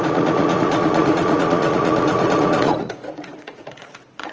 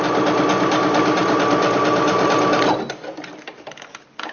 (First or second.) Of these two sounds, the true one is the second